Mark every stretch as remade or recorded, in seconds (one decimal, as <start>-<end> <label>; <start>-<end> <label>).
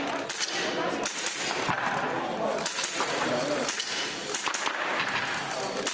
0.0-5.9 recorded